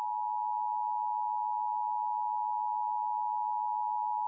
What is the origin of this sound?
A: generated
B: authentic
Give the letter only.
B